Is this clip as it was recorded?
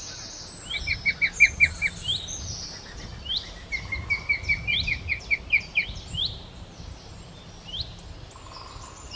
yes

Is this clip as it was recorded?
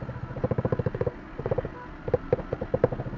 yes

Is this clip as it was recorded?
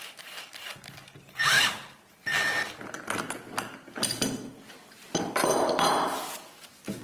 yes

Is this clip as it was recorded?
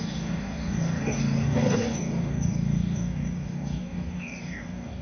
no